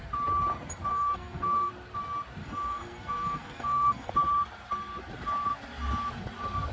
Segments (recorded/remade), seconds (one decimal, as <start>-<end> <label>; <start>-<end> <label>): 0.0-0.9 recorded; 0.9-1.7 remade; 1.7-2.4 recorded; 2.4-4.1 remade; 4.1-6.7 recorded